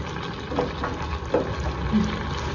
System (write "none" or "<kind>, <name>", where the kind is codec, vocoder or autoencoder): none